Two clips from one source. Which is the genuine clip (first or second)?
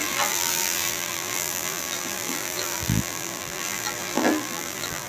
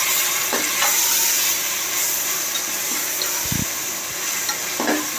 second